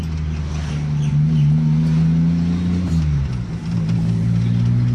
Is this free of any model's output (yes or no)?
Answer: yes